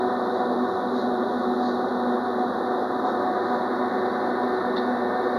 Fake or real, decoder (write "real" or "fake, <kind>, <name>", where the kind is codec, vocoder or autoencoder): fake, vocoder, BigVGAN v2